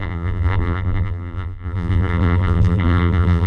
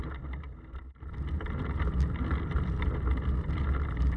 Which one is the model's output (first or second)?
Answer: first